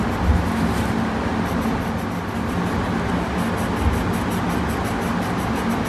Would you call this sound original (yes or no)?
yes